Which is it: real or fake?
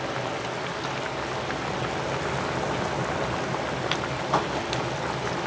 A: real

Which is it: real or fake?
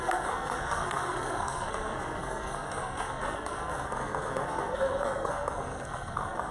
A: fake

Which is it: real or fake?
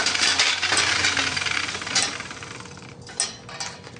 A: real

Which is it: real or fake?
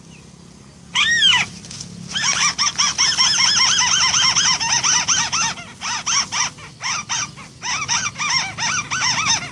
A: real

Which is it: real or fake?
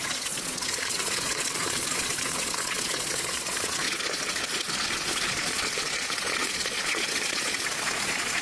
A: fake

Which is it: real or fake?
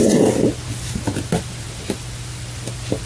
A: real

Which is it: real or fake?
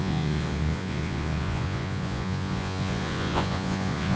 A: fake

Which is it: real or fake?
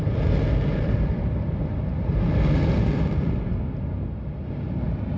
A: real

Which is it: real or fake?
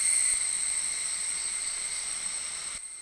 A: real